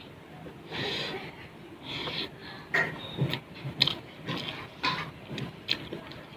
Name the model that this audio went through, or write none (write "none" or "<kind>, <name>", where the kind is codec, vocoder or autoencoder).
none